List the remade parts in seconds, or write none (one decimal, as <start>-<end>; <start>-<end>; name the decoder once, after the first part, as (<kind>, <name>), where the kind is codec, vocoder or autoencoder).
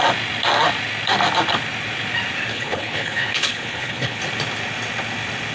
2.5-4.2 (codec, HILCodec)